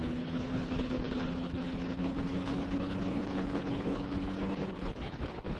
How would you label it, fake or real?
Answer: fake